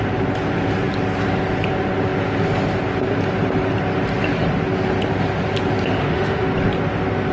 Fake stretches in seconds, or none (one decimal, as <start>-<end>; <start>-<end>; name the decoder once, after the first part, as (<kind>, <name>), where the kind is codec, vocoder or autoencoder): 6.0-6.5 (autoencoder, DAC-VAE)